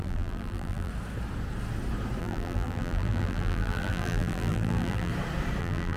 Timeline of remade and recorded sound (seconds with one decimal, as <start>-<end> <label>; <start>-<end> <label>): 0.0-0.9 remade; 0.9-2.2 recorded; 2.2-5.1 remade; 5.1-5.6 recorded; 5.6-6.0 remade